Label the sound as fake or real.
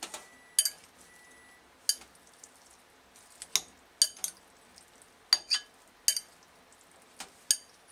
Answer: real